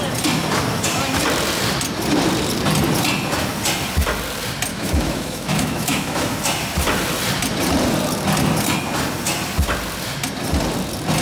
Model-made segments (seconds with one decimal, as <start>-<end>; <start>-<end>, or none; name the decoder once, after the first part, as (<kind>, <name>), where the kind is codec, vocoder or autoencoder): 4.7-6.4 (autoencoder, DAC-VAE)